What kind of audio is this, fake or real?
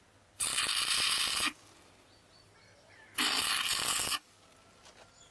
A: real